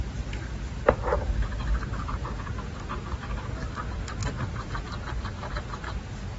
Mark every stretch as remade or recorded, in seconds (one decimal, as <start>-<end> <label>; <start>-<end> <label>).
0.0-6.4 recorded